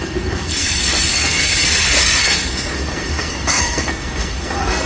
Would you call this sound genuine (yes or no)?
no